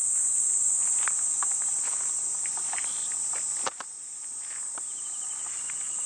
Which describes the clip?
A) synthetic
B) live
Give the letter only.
B